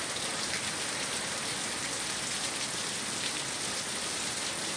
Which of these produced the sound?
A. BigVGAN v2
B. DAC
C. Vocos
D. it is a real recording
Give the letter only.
A